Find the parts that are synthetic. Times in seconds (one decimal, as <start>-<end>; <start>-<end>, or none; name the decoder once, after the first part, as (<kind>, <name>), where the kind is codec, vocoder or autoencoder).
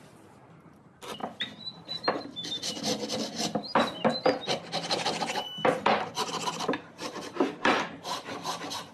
none